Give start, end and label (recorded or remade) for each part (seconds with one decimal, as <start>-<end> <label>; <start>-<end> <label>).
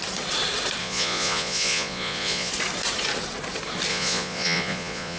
0.0-0.8 recorded; 0.8-2.5 remade; 2.5-3.9 recorded; 3.9-5.2 remade